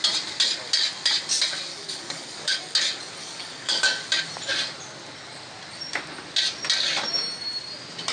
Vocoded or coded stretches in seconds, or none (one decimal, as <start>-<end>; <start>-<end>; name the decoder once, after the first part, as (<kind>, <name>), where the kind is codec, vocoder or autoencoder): 1.7-2.6 (codec, DAC); 3.2-3.8